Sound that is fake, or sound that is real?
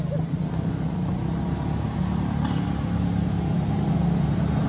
real